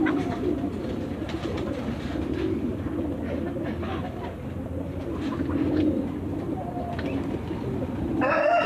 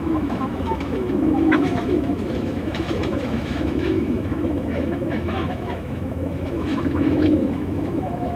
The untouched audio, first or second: first